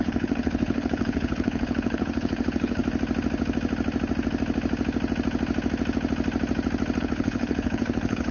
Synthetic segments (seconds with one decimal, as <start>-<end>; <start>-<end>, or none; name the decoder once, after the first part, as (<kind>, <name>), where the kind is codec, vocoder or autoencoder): 0.0-2.8 (codec, HILCodec); 7.0-8.3